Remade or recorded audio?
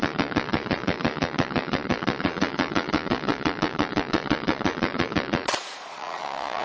remade